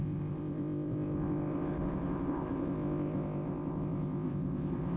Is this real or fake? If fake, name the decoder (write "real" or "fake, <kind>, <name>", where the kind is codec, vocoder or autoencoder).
fake, codec, ZipCodec